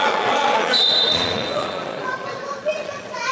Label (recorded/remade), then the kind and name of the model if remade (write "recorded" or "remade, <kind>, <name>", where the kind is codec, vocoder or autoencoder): remade, vocoder, Vocos